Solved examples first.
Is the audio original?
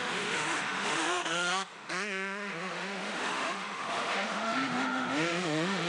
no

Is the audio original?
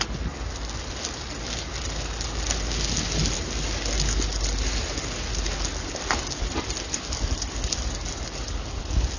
yes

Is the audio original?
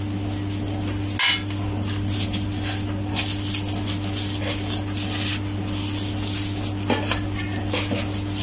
yes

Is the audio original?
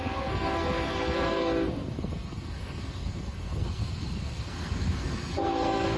no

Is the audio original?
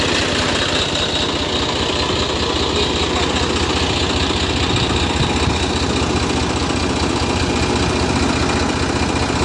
yes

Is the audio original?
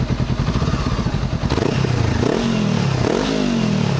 yes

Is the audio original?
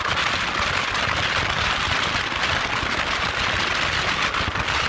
yes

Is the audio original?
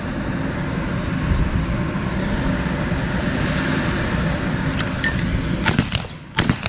yes